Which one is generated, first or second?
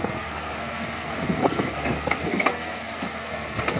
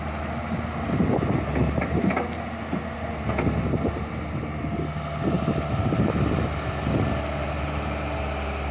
first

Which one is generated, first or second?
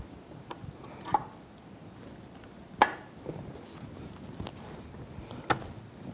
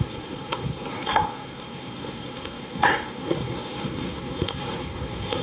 second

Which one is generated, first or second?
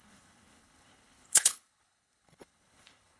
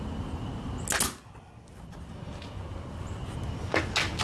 first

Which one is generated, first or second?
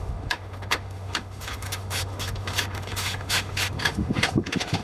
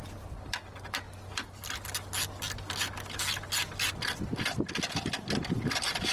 first